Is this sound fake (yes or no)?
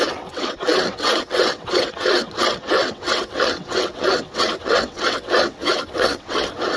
yes